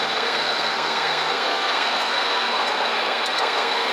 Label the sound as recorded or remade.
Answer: remade